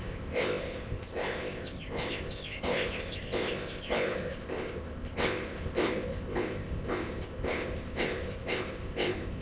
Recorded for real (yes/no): no